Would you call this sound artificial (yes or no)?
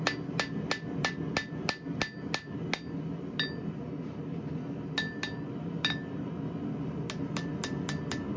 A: no